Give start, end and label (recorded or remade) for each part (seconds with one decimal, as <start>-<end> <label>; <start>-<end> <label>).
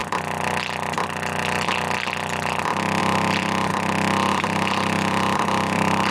0.0-3.0 recorded; 3.0-3.7 remade; 3.7-4.3 recorded; 4.3-6.1 remade